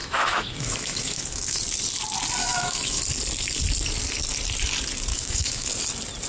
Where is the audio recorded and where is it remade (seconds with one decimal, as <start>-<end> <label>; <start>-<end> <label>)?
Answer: 0.0-1.6 remade; 1.6-2.4 recorded; 2.4-3.0 remade; 3.0-5.1 recorded; 5.1-5.7 remade; 5.7-6.3 recorded